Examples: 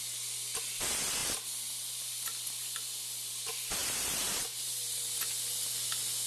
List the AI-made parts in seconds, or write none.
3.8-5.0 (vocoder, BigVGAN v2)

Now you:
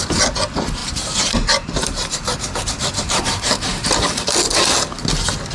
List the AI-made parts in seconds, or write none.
0.8-4.0 (vocoder, BigVGAN v2)

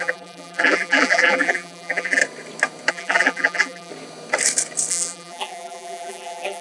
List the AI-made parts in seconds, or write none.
0.0-2.2 (vocoder, BigVGAN v2); 2.9-3.9; 4.9-6.6

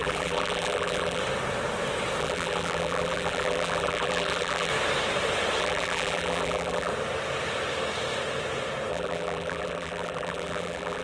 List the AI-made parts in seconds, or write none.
0.0-1.2 (vocoder, BigVGAN v2); 2.2-4.7; 5.6-6.9; 8.9-11.0

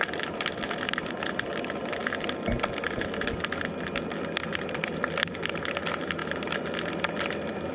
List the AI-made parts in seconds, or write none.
0.0-2.0 (vocoder, BigVGAN v2); 4.5-6.2; 6.9-7.7